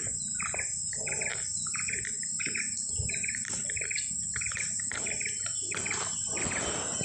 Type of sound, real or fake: real